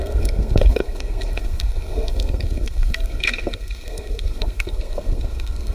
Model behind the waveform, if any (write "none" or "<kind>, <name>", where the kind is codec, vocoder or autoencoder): codec, SNAC